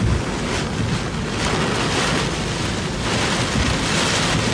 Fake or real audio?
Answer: real